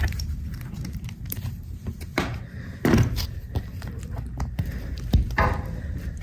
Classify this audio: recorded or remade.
remade